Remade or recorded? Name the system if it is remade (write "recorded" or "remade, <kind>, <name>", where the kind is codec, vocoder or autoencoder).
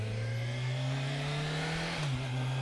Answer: recorded